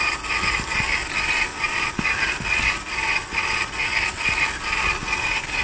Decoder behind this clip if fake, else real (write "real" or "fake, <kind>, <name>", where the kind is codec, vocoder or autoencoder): real